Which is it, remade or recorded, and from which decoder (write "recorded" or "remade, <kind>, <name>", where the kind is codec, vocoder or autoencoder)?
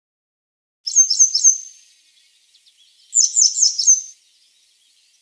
recorded